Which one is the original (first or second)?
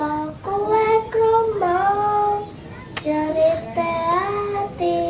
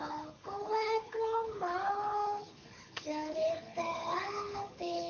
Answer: first